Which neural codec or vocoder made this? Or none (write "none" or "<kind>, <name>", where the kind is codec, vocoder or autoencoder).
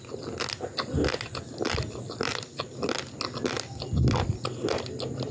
none